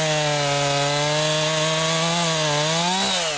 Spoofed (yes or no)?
no